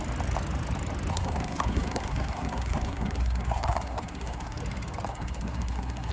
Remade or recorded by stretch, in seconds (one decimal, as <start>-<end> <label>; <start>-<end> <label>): 0.0-1.1 recorded; 1.1-4.6 remade; 4.6-5.1 recorded; 5.1-6.1 remade